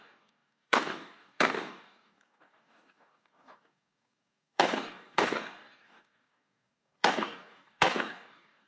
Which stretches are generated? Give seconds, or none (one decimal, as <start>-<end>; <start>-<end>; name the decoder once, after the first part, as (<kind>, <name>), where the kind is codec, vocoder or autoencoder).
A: 0.0-8.7 (codec, DAC)